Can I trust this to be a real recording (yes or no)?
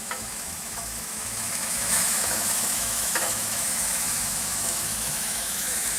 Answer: no